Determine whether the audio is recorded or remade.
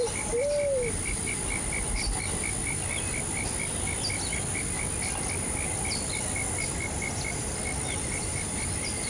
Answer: recorded